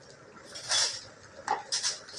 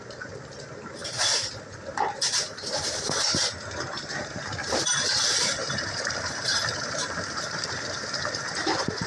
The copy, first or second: second